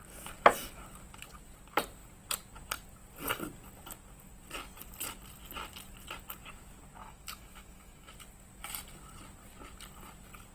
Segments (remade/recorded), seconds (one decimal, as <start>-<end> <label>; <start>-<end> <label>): 0.0-7.0 recorded; 7.0-8.1 remade; 8.1-10.5 recorded